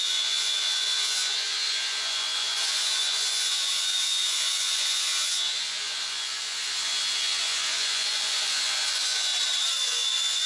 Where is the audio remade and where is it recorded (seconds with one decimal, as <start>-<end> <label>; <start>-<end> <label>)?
0.0-9.3 remade; 9.3-9.8 recorded; 9.8-10.5 remade

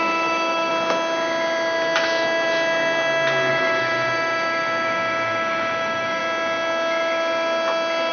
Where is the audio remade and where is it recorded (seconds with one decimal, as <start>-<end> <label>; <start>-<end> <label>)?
0.0-0.7 remade; 0.7-3.5 recorded; 3.5-6.2 remade; 6.2-8.1 recorded